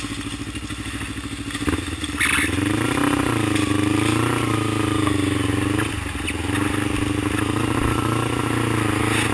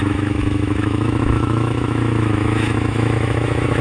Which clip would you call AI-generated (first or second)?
second